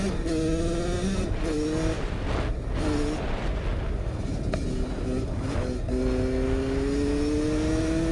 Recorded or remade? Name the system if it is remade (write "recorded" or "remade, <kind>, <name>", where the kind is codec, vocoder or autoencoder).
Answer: recorded